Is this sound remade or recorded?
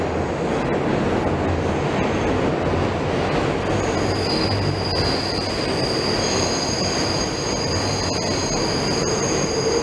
recorded